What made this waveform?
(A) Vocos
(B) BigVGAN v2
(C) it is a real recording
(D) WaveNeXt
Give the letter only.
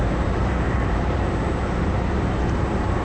B